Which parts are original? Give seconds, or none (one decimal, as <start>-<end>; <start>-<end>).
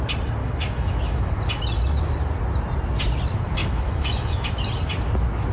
0.0-0.4; 1.3-3.6; 4.5-5.5